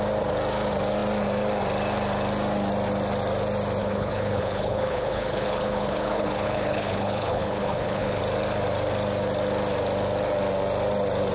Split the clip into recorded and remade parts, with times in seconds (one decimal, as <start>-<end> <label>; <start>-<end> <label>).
0.0-3.8 recorded; 3.8-8.2 remade; 8.2-11.3 recorded